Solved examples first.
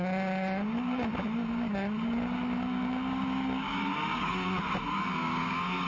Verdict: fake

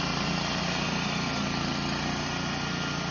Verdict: real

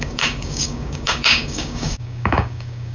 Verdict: fake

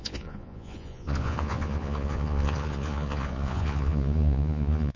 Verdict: fake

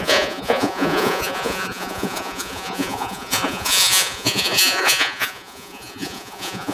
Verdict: fake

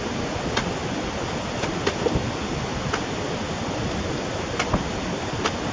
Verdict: real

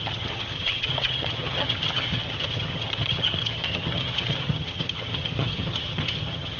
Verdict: fake